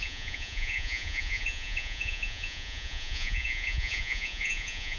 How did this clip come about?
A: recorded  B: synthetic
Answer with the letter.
B